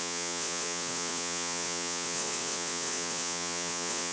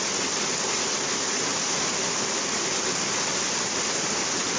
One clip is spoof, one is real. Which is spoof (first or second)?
first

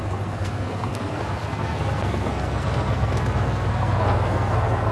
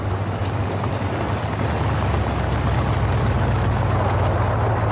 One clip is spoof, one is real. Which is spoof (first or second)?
first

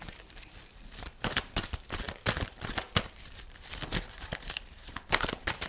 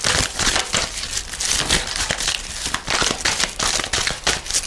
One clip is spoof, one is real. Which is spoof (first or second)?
first